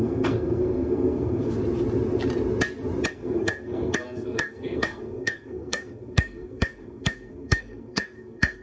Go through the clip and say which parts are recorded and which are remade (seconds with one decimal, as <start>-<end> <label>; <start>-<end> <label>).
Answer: 0.0-1.5 remade; 1.5-3.1 recorded; 3.1-8.6 remade